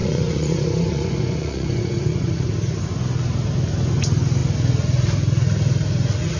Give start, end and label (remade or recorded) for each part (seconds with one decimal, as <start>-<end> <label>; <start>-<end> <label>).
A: 0.0-2.3 remade; 2.3-6.4 recorded